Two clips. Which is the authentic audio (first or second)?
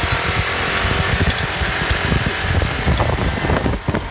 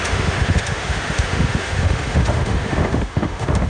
first